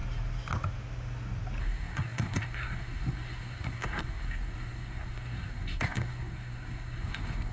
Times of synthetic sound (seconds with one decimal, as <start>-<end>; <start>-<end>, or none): 1.6-7.5